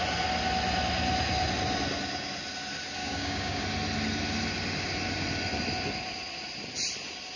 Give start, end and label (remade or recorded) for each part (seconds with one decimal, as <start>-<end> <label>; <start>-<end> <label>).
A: 0.0-3.0 recorded; 3.0-3.6 remade; 3.6-7.4 recorded